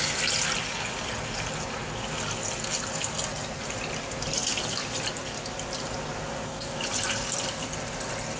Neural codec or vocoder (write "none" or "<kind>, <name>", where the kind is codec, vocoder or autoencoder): none